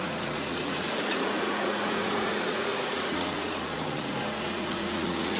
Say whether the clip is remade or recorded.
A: remade